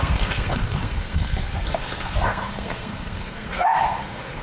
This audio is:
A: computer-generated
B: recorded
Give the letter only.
A